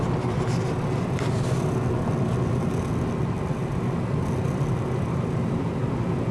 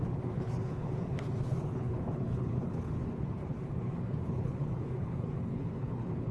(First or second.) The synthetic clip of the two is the second